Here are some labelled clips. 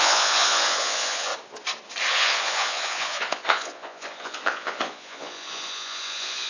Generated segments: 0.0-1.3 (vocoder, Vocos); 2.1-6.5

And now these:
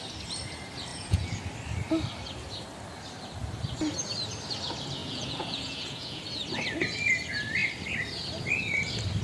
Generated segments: 0.9-1.4 (vocoder, Vocos); 5.0-6.2

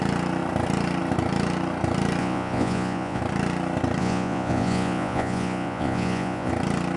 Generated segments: 2.2-3.2 (vocoder, Vocos); 4.0-6.5

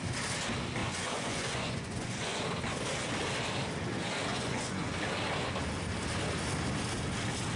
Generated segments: 0.8-2.4 (vocoder, Vocos); 4.3-4.9

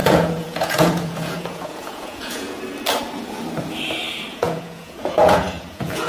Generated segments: 0.0-2.6 (vocoder, Vocos); 4.3-6.1

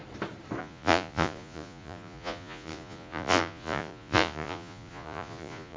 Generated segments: 0.6-5.8 (vocoder, Vocos)